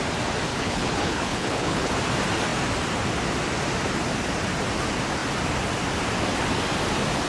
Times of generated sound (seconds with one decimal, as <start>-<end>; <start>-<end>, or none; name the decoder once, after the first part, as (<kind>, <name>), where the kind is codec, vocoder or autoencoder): 0.5-1.9 (codec, HILCodec)

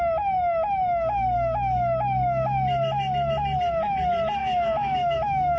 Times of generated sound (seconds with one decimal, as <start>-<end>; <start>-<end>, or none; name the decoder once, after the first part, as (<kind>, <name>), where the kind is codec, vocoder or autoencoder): 4.4-5.6 (autoencoder, DAC-VAE)

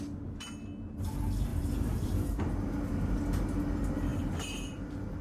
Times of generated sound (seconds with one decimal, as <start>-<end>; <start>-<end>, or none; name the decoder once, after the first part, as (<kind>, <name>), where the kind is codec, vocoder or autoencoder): 1.5-2.4 (vocoder, BigVGAN v2)

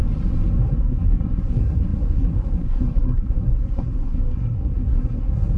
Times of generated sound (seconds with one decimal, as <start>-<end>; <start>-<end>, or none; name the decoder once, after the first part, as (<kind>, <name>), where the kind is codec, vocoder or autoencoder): 0.6-5.6 (codec, SNAC)